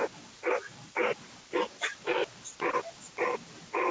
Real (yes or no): yes